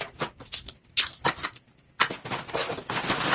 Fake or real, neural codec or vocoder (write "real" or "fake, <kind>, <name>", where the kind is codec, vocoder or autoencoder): real